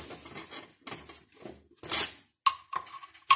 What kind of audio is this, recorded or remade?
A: recorded